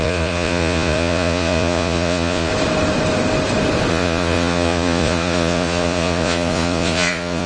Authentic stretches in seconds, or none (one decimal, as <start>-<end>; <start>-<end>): 2.5-3.9